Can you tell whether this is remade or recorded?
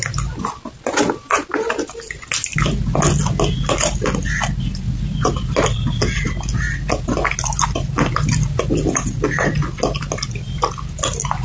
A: recorded